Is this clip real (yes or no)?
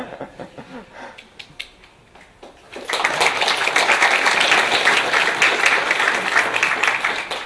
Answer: yes